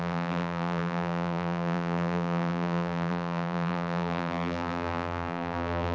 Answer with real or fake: fake